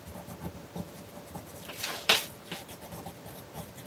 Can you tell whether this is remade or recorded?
recorded